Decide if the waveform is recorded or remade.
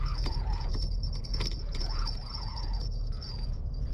remade